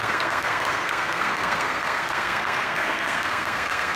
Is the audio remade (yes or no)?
yes